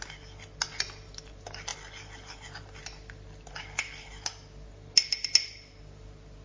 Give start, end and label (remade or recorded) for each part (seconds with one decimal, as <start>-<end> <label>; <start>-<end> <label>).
0.0-6.4 recorded